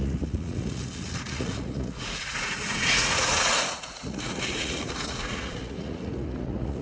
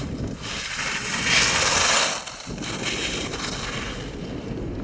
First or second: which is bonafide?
second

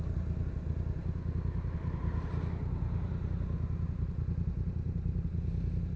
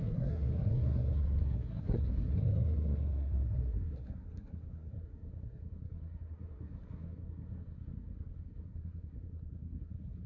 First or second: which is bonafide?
first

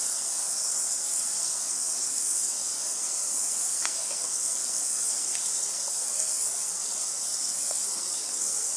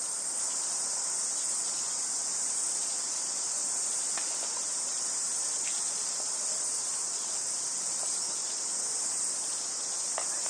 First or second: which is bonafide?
second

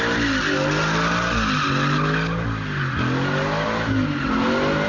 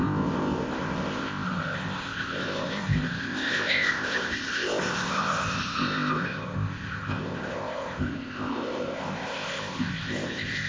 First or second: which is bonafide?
first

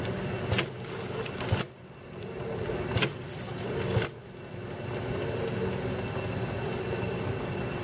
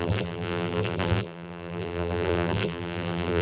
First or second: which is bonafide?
first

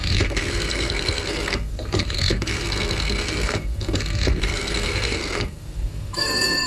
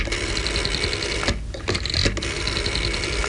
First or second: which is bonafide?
second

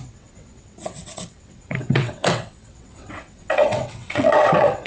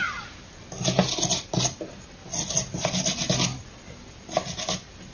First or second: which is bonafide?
second